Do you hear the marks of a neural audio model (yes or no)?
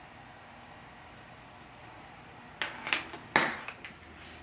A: no